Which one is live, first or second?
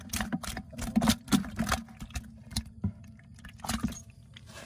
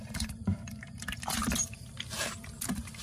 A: first